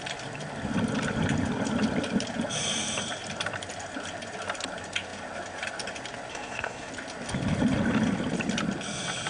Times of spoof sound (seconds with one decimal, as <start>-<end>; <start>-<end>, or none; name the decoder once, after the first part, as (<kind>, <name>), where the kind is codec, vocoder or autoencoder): 6.3-6.9 (codec, SNAC)